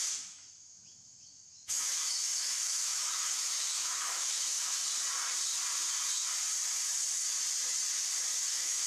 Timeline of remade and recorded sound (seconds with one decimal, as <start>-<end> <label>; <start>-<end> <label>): 0.0-4.8 remade; 4.8-8.5 recorded; 8.5-8.9 remade